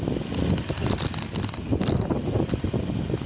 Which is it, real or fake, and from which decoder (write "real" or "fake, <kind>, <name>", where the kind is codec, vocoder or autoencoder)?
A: real